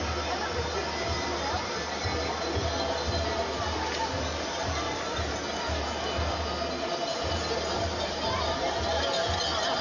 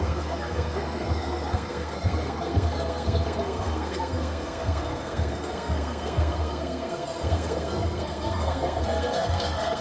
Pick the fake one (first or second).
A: second